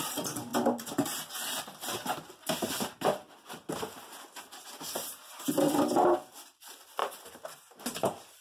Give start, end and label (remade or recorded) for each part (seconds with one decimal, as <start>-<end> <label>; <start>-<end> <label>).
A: 0.0-8.4 remade